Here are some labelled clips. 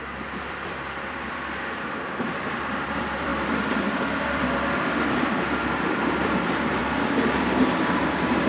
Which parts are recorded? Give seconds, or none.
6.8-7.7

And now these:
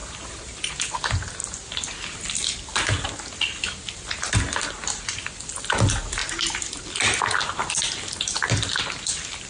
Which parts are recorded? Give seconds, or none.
0.7-6.2; 6.8-9.5

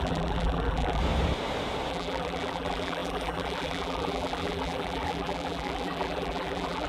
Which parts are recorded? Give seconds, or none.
1.0-1.9

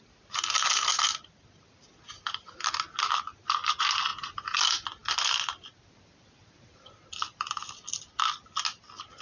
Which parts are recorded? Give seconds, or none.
0.0-4.1; 4.6-9.2

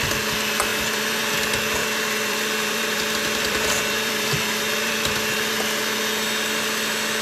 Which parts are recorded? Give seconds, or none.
0.0-0.7; 1.3-1.8; 5.6-7.2

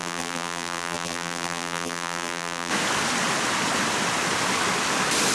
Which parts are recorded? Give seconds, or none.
2.7-5.3

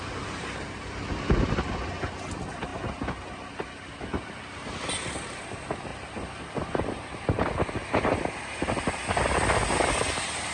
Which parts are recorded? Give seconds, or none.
0.0-10.5

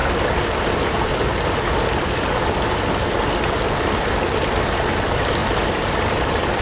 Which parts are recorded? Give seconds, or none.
1.1-5.4